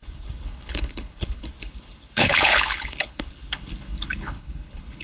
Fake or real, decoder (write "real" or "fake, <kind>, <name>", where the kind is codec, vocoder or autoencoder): fake, codec, HILCodec